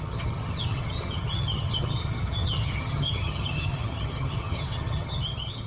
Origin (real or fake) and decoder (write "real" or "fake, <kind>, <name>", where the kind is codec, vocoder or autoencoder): fake, vocoder, HiFi-GAN